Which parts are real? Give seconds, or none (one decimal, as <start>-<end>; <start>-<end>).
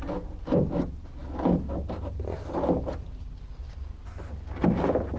0.0-5.2